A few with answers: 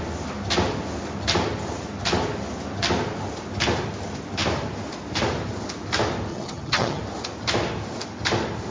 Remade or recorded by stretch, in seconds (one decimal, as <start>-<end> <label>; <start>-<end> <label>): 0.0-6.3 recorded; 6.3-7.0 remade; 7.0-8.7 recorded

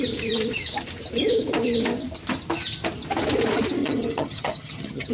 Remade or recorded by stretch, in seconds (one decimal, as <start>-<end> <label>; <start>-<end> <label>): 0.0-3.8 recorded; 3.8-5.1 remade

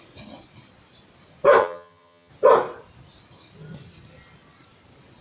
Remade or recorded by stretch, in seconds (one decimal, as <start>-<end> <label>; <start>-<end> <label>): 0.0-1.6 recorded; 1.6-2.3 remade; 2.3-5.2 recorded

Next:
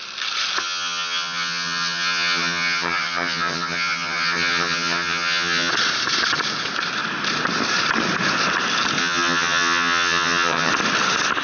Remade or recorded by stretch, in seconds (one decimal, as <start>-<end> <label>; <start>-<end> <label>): 0.0-0.6 recorded; 0.6-5.7 remade; 5.7-9.0 recorded; 9.0-10.7 remade; 10.7-11.4 recorded